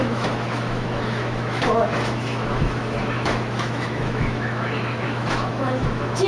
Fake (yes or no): yes